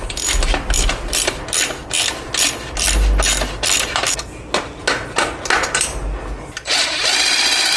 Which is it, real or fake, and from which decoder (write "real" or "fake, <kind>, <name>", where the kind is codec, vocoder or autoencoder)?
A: real